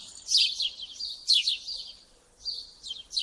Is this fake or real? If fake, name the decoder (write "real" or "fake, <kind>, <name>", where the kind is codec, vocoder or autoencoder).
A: real